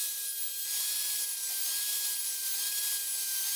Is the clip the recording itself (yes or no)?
yes